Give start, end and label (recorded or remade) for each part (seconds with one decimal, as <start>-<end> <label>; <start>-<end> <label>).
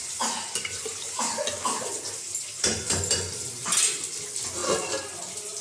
0.0-5.6 recorded